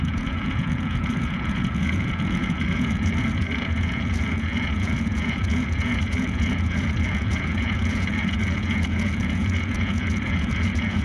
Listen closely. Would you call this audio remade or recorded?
remade